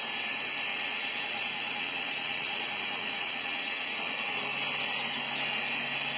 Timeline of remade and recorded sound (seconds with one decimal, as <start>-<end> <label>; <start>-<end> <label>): 0.0-0.7 recorded; 0.7-4.4 remade; 4.4-6.2 recorded